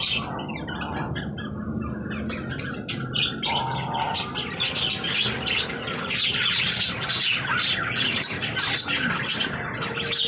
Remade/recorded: recorded